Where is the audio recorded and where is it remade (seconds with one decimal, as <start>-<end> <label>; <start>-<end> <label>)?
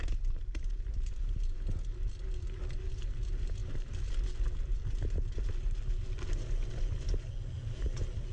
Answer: 0.0-8.3 recorded